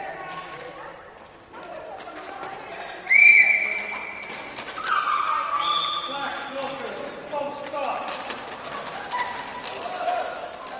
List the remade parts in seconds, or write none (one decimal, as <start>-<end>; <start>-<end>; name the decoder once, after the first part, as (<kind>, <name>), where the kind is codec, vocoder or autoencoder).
none